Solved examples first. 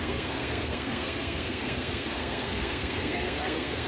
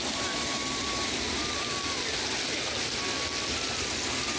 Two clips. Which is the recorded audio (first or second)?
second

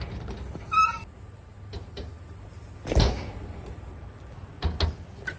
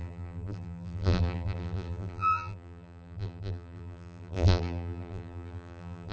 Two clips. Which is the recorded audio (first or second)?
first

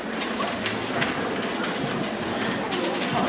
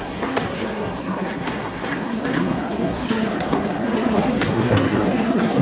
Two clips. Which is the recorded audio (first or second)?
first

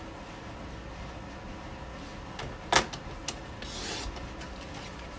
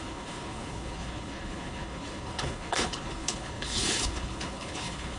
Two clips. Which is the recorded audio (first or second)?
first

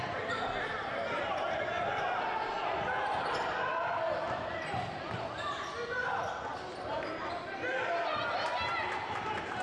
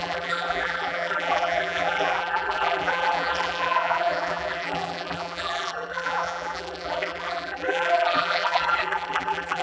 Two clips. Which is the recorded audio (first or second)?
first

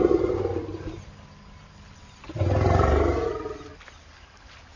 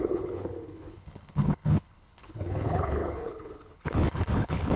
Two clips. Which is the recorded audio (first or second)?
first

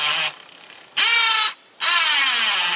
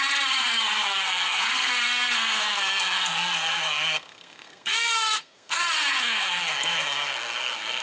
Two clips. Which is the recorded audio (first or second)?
first